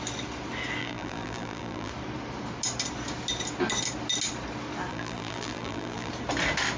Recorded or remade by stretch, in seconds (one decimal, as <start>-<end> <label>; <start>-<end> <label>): 0.0-0.8 recorded; 0.8-1.9 remade; 1.9-4.9 recorded; 4.9-6.1 remade; 6.1-6.8 recorded